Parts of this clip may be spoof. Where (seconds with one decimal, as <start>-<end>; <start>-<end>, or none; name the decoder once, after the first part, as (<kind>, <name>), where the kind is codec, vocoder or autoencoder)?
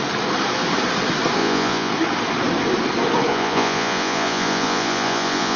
1.4-1.9 (vocoder, Vocos); 3.3-5.6